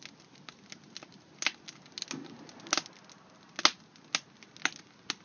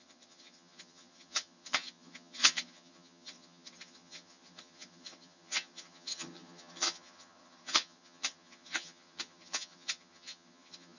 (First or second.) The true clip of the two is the first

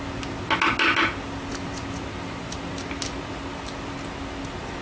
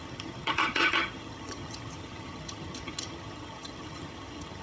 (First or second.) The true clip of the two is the first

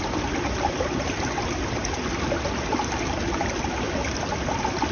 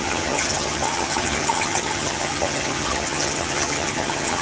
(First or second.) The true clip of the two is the first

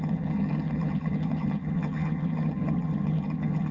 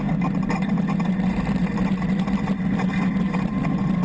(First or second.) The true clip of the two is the second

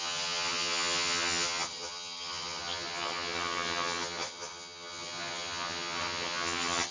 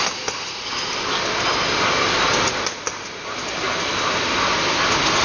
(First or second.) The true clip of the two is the second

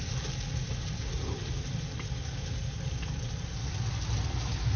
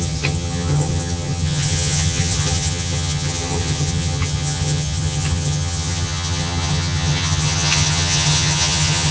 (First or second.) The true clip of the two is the first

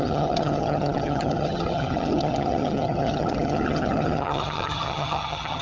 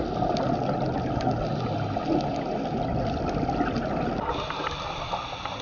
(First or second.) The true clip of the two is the second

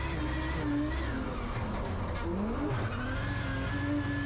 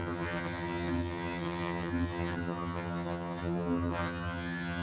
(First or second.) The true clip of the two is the first